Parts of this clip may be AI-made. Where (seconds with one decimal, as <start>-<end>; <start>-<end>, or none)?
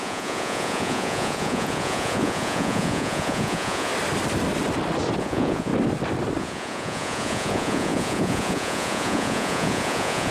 0.0-3.9; 5.2-5.7; 6.4-10.3